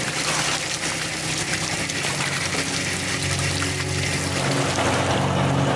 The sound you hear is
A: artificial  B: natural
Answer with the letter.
B